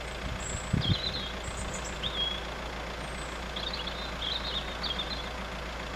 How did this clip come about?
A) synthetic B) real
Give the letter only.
B